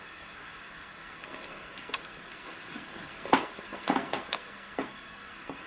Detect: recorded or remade remade